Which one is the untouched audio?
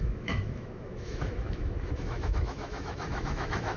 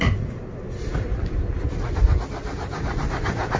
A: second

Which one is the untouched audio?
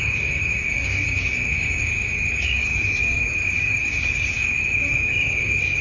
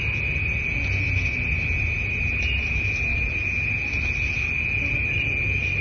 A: second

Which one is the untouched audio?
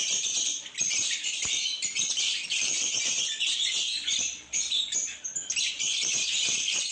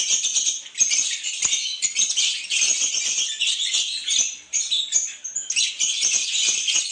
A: second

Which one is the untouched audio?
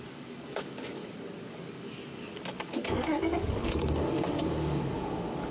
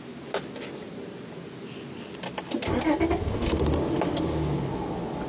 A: second